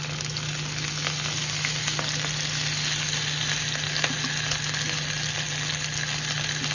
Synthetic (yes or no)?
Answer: no